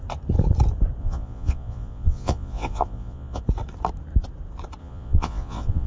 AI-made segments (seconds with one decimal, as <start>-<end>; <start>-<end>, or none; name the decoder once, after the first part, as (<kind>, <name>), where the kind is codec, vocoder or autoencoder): 1.0-3.4 (vocoder, Vocos); 4.8-5.9